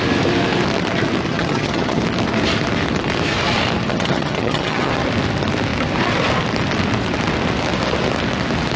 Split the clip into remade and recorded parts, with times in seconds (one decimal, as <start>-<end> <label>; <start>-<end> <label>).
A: 0.0-1.3 recorded; 1.3-2.0 remade; 2.0-3.9 recorded; 3.9-4.9 remade; 4.9-8.8 recorded